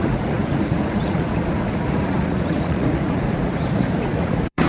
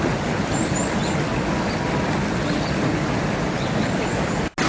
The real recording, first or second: second